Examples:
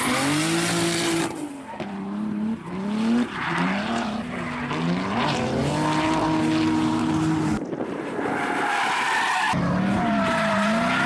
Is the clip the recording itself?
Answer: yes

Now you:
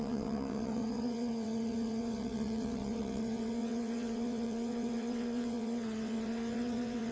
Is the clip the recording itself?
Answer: no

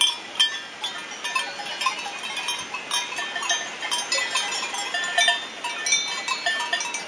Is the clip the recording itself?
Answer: yes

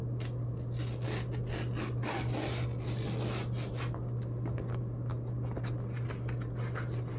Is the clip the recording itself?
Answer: yes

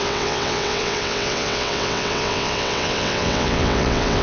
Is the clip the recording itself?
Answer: no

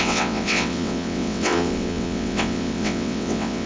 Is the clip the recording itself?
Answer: no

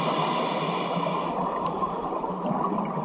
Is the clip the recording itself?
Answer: yes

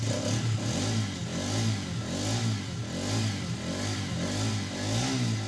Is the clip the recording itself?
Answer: yes